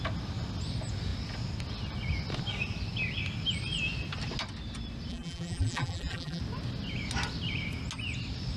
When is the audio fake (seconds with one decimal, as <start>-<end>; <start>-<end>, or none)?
5.1-6.4